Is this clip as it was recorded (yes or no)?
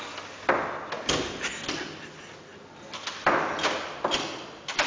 yes